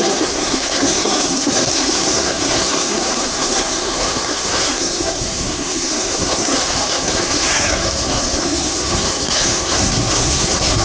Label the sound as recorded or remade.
remade